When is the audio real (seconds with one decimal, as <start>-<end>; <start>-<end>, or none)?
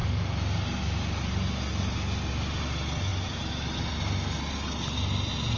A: 0.0-5.6